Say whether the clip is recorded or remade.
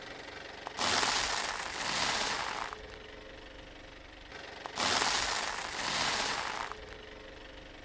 recorded